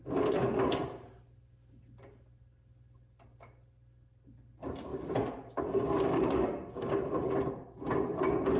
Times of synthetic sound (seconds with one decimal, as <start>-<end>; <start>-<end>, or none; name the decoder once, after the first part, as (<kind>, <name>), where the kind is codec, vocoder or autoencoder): none

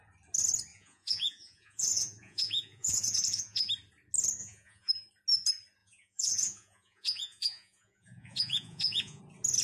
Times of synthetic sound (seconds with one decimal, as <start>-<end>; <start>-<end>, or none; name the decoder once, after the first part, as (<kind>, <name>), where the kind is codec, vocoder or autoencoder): 0.7-3.7 (vocoder, Vocos); 4.4-4.9; 5.8-9.2

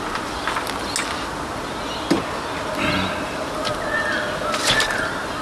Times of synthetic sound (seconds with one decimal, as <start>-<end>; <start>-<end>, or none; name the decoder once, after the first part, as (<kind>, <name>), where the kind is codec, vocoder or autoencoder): none

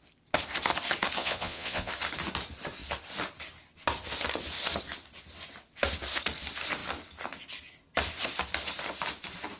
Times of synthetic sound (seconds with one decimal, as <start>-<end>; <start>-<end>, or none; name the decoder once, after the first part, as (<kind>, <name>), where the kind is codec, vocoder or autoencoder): 1.2-1.9 (vocoder, Vocos)

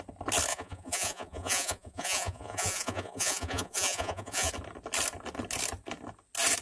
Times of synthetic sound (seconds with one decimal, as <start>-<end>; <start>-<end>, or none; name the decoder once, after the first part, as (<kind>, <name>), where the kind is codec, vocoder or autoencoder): 0.5-4.5 (vocoder, Vocos)

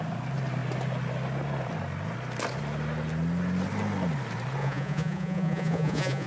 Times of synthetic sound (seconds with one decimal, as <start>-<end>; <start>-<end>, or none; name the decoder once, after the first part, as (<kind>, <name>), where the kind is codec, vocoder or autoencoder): 4.6-6.3 (vocoder, Vocos)